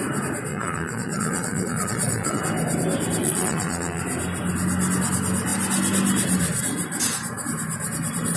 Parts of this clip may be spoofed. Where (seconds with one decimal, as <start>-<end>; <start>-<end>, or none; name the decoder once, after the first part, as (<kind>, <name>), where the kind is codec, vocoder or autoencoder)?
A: 0.5-2.4 (vocoder, Vocos); 3.2-4.0